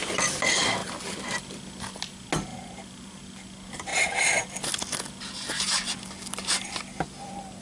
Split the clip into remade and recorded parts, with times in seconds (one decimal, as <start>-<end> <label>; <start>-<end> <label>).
0.0-0.8 recorded; 0.8-1.4 remade; 1.4-2.5 recorded; 2.5-3.2 remade; 3.2-7.6 recorded